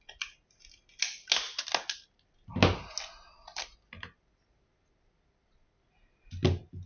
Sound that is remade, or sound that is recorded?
recorded